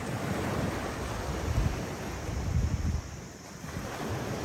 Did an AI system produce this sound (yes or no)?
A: no